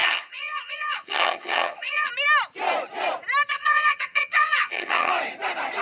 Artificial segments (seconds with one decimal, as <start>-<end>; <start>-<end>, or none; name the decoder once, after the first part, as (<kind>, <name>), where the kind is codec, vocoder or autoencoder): 0.0-2.1 (vocoder, HiFi-GAN); 3.5-5.1